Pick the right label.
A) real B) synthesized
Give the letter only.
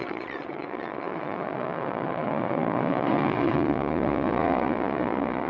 B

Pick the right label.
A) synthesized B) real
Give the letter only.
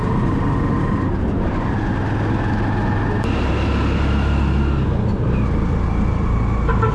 B